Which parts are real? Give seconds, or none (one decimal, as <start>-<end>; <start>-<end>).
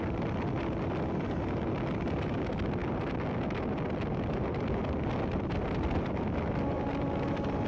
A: 0.0-7.7